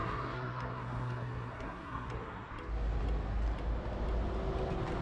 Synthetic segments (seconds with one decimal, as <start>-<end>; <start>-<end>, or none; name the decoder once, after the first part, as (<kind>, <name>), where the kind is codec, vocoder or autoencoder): 0.0-2.5 (codec, SNAC)